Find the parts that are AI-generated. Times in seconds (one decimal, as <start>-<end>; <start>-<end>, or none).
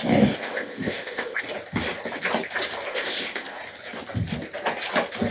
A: 0.4-1.4; 2.9-3.6